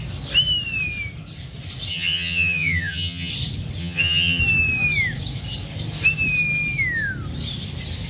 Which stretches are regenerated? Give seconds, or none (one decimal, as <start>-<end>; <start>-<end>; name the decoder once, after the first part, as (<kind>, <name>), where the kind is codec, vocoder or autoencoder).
1.9-3.3 (vocoder, HiFi-GAN); 3.8-4.4